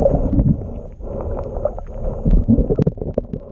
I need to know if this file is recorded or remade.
recorded